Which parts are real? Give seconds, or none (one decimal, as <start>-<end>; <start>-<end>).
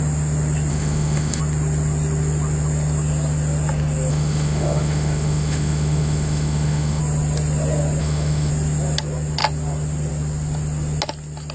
0.0-0.7; 1.4-4.1; 7.0-8.0; 8.5-11.5